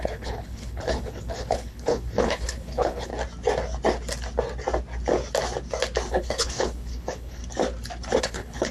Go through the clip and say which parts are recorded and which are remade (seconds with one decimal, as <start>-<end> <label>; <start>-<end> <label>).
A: 0.0-3.1 remade; 3.1-6.1 recorded; 6.1-7.4 remade; 7.4-8.2 recorded; 8.2-8.7 remade